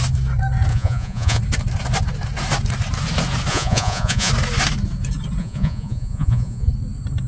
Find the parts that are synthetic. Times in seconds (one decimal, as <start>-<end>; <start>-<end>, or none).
0.7-1.4; 3.5-4.3; 5.4-6.7